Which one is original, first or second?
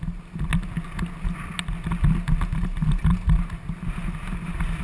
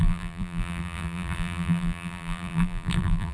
first